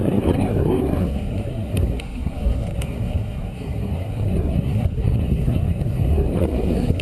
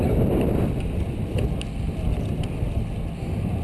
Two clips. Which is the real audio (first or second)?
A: second